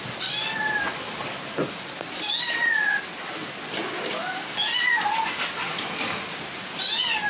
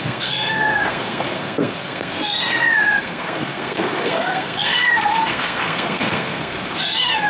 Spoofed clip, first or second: second